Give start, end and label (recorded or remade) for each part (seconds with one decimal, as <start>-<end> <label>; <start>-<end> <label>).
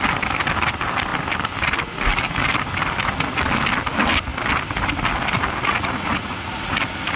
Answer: 0.0-5.6 recorded; 5.6-6.7 remade; 6.7-7.2 recorded